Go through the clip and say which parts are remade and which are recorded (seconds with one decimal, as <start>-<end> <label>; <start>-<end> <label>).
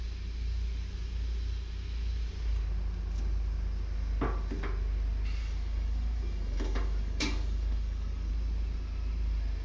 0.0-5.4 recorded; 5.4-8.3 remade; 8.3-9.6 recorded